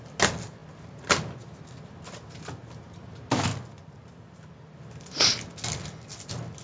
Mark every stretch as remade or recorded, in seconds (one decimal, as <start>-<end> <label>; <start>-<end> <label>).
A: 0.0-6.6 recorded